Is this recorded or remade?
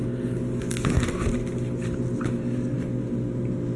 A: recorded